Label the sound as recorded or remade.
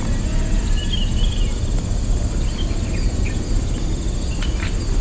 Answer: recorded